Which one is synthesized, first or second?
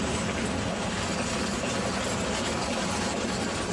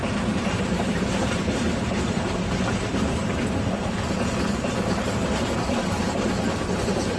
second